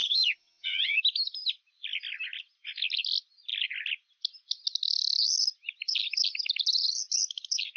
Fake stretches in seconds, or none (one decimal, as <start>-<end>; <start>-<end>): 0.0-1.0